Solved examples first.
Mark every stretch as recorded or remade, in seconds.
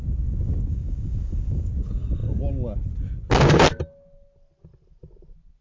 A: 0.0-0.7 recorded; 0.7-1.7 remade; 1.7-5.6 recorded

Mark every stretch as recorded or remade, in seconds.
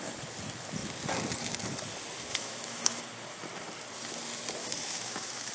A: 0.0-2.3 recorded; 2.3-3.0 remade; 3.0-4.6 recorded; 4.6-5.5 remade